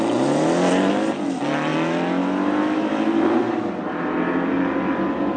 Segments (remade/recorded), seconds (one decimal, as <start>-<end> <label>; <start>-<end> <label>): 0.0-5.4 recorded

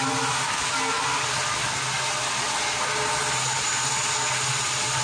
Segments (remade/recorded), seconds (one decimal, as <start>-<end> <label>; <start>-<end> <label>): 0.0-5.0 recorded